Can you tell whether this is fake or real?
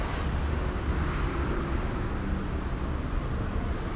real